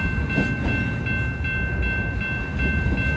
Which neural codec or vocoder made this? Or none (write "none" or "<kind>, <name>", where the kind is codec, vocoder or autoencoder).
none